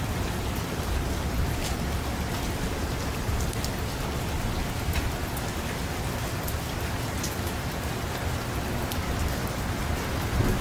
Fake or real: real